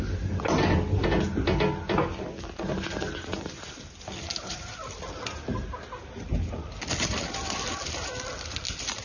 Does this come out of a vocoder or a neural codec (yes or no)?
no